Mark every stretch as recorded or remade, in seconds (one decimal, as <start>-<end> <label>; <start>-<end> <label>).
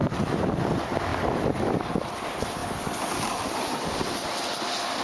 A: 0.0-0.6 remade; 0.6-5.0 recorded